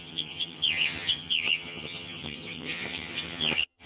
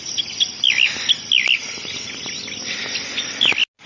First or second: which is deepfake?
first